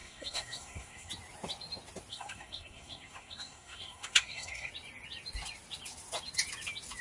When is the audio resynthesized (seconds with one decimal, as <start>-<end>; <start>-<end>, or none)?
0.0-1.1; 2.1-4.7